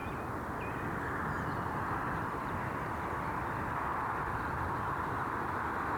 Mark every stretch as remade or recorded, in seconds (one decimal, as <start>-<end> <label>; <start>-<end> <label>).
0.0-6.0 recorded